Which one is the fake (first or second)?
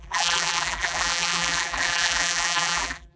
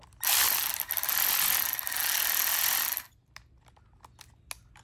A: first